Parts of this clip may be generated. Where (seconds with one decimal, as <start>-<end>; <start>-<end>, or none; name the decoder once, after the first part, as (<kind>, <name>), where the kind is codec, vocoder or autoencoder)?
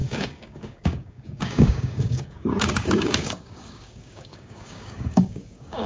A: 0.0-5.9 (codec, DAC)